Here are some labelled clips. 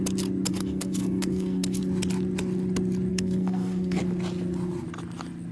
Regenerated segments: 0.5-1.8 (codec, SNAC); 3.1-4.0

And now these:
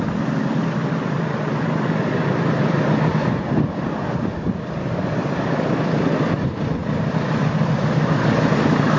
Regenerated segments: none